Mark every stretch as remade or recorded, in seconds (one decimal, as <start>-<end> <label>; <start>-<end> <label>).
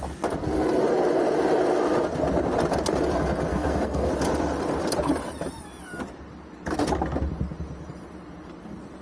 0.0-3.5 recorded; 3.5-4.1 remade; 4.1-9.0 recorded